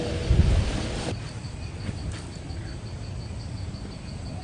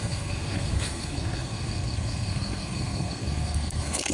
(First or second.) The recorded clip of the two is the first